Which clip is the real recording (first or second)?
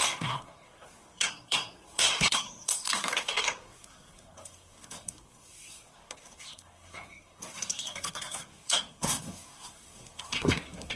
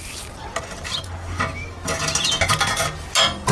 second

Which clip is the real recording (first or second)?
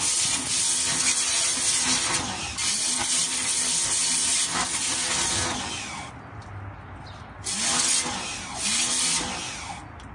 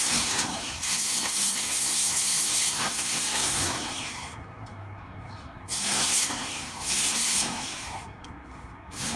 first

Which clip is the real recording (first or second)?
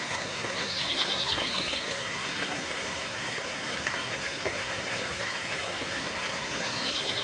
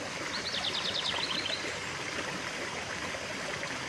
second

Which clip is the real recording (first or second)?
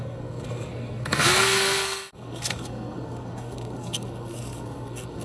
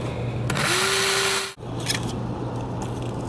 second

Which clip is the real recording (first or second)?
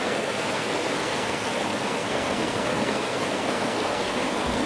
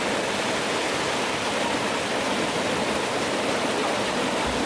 second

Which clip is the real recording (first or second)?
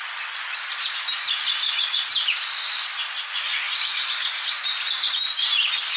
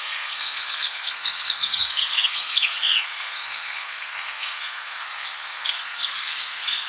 first